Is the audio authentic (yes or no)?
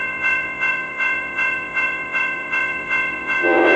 no